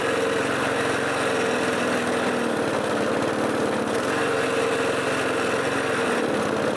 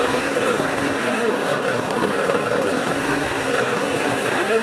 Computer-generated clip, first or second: second